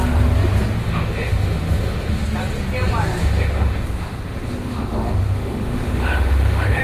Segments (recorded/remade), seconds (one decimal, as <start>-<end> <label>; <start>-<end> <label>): 0.0-0.8 recorded; 0.8-2.2 remade; 2.2-3.2 recorded; 3.2-6.8 remade